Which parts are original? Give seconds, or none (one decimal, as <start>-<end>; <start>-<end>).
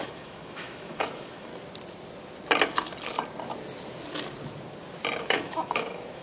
1.5-5.2